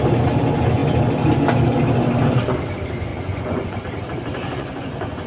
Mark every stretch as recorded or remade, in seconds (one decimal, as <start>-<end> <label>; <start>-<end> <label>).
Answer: 0.0-3.1 recorded; 3.1-3.8 remade; 3.8-4.3 recorded; 4.3-5.3 remade